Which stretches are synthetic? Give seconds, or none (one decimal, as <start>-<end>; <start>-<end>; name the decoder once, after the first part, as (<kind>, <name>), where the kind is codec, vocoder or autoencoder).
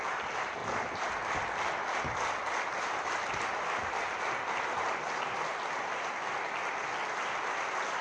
none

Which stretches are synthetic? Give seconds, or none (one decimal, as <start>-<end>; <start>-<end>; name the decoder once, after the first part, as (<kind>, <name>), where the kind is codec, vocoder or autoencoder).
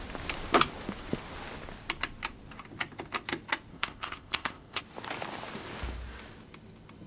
3.7-4.8 (codec, ZipCodec)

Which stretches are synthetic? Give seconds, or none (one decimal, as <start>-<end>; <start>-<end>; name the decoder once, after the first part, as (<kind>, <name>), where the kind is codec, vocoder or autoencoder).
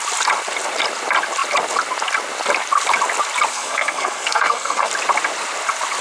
3.5-4.9 (codec, SNAC)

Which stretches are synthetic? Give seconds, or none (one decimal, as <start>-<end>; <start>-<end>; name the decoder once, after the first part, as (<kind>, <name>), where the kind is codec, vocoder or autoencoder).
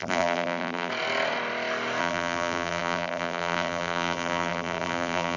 0.0-0.9 (vocoder, BigVGAN v2); 2.0-5.4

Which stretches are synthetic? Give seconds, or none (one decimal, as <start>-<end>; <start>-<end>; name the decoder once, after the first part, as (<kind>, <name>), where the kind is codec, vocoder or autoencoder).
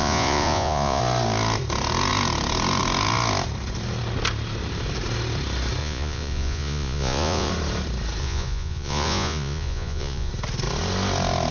0.0-1.0 (vocoder, Vocos); 5.8-7.5; 8.2-10.3